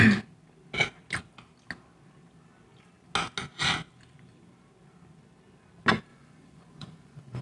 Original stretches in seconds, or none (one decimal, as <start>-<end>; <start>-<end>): 0.0-6.1